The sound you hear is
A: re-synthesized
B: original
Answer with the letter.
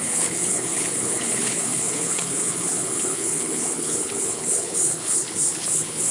A